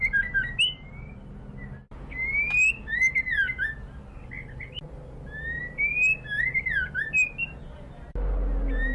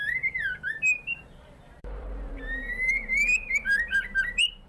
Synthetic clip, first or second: second